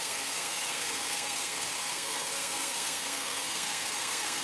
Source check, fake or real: fake